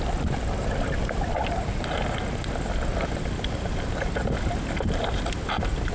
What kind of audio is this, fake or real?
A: real